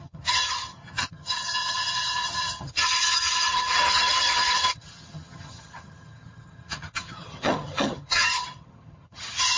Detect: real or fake fake